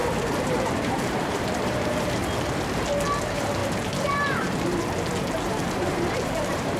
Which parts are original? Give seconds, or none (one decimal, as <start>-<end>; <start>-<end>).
2.2-3.2; 3.6-5.5